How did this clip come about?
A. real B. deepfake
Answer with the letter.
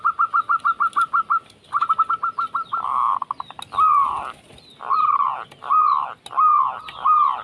A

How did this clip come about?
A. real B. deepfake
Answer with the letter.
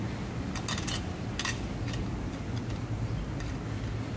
A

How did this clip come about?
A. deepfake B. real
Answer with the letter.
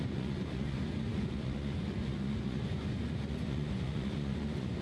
A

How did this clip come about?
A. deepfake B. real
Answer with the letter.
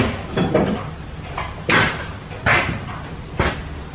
B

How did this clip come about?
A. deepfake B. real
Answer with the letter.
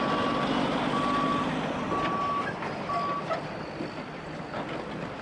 B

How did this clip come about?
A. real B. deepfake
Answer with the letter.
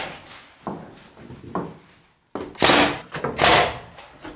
A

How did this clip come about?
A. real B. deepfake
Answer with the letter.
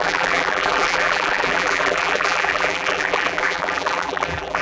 B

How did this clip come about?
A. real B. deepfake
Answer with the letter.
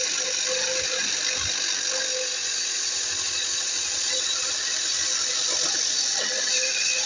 A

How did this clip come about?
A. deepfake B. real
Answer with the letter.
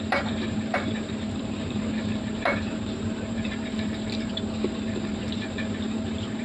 A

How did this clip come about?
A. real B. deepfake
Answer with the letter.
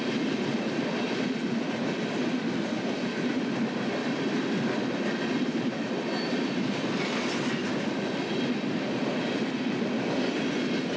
A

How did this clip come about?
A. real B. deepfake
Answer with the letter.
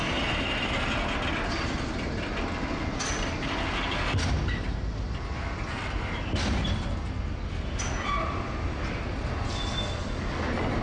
A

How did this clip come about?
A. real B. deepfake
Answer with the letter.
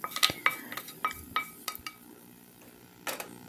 A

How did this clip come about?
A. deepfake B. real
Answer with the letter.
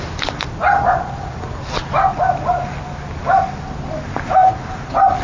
B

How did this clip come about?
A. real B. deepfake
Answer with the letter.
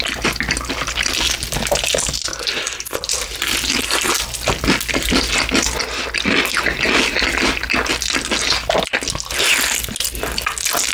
A